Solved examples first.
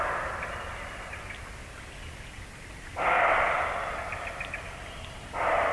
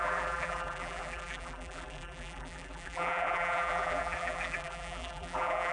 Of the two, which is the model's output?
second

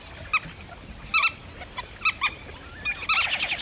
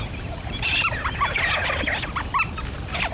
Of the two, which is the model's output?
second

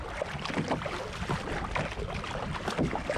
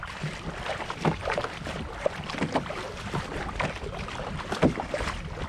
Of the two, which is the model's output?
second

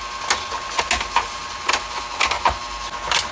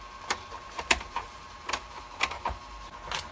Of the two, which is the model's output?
second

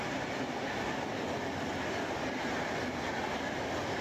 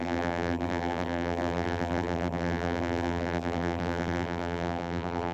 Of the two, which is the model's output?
second